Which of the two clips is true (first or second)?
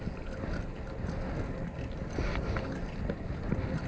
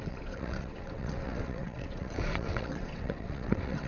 first